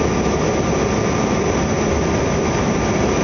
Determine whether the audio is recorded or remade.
recorded